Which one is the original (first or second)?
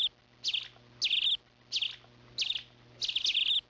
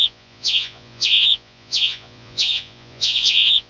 first